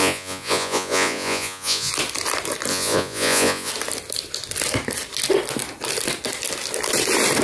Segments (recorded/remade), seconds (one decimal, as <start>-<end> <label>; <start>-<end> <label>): 0.0-1.9 remade; 1.9-2.7 recorded; 2.7-3.7 remade; 3.7-7.4 recorded